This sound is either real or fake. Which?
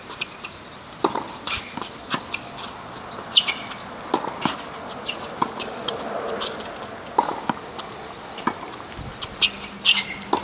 real